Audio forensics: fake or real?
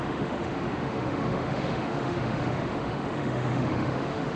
fake